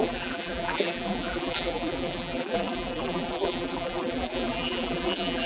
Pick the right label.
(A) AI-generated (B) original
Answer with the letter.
A